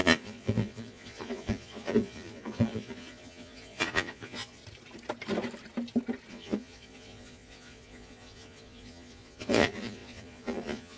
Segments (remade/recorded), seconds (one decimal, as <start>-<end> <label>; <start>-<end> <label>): 0.0-4.6 remade; 4.6-6.3 recorded; 6.3-11.0 remade